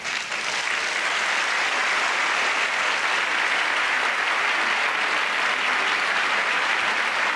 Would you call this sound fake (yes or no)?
no